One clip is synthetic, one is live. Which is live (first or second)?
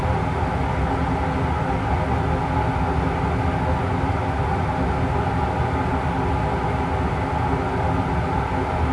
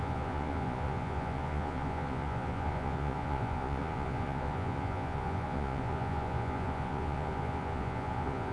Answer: first